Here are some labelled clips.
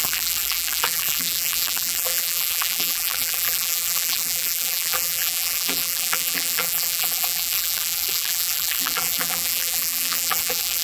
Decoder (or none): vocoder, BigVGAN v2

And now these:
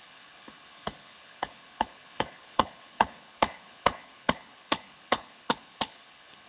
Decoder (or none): codec, HILCodec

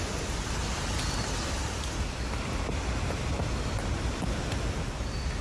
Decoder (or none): none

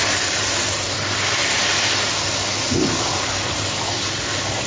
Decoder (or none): none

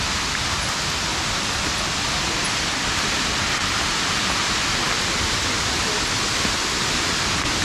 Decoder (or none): none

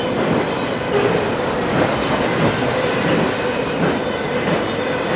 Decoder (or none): none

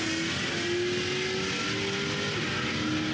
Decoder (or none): none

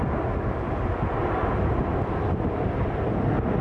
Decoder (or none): none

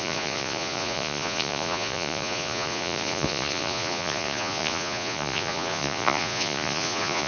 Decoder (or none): vocoder, Vocos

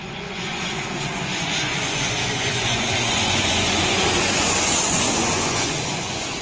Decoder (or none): vocoder, Vocos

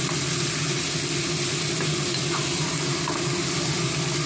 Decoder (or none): none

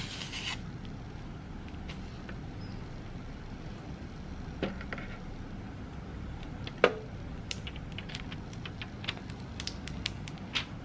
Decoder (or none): none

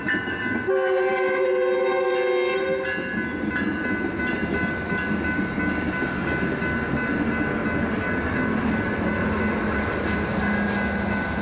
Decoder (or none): none